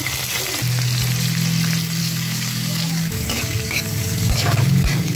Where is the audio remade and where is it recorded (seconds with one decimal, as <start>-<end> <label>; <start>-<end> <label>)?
0.0-2.0 recorded; 2.0-5.2 remade